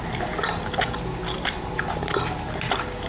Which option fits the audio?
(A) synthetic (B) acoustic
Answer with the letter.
B